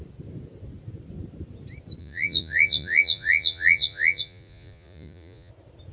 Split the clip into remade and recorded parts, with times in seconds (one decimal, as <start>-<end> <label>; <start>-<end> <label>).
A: 0.0-2.0 recorded; 2.0-5.5 remade; 5.5-5.9 recorded